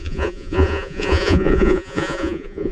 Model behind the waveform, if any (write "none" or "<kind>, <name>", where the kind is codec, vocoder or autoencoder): vocoder, Vocos